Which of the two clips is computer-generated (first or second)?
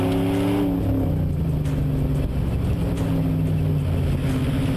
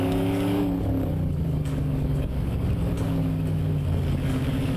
second